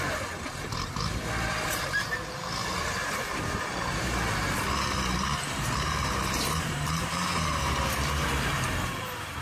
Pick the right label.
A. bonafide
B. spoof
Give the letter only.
B